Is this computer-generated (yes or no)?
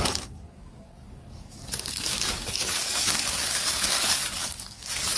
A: yes